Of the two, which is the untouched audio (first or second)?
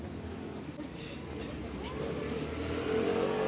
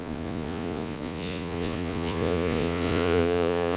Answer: first